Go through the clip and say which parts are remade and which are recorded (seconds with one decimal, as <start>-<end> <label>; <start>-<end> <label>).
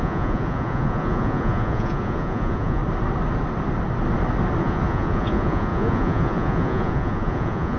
0.0-2.8 remade; 2.8-4.6 recorded; 4.6-7.8 remade